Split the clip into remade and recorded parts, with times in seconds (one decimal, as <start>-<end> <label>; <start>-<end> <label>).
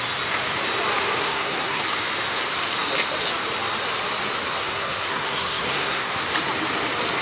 0.0-1.2 recorded; 1.2-1.8 remade; 1.8-4.6 recorded; 4.6-6.1 remade; 6.1-7.2 recorded